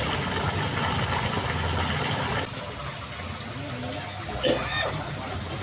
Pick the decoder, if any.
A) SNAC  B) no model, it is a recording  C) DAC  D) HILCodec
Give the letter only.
B